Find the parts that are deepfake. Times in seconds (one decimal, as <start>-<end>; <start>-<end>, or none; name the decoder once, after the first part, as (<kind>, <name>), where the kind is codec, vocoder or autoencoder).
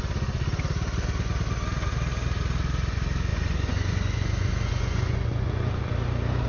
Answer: 3.3-5.9 (vocoder, Vocos)